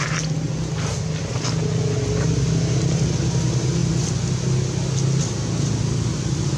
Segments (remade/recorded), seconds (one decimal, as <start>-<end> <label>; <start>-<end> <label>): 0.0-6.6 recorded